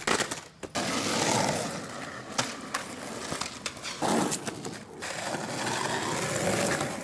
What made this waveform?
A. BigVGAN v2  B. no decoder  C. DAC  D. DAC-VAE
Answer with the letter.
B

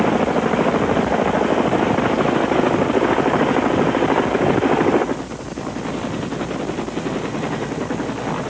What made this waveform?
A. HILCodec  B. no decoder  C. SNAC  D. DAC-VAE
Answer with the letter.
B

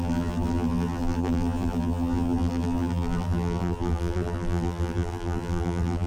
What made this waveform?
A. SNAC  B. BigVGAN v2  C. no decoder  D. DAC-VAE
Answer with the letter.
B